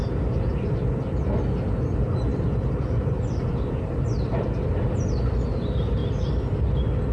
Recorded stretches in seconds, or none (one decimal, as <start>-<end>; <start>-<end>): 0.0-0.5; 1.2-2.3; 4.2-6.0; 6.6-7.1